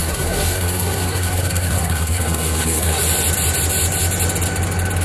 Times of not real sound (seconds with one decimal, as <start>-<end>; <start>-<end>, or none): 0.0-3.0